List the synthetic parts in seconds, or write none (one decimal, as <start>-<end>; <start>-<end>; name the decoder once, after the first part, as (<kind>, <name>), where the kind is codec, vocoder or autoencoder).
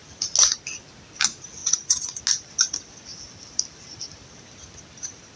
1.6-2.2 (vocoder, Vocos)